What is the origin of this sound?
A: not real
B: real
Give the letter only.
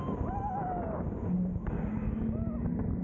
B